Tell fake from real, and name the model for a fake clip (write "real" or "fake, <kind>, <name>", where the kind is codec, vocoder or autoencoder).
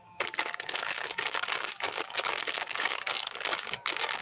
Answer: fake, codec, DAC